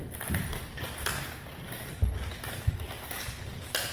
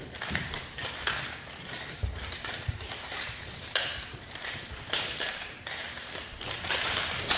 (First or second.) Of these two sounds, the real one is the first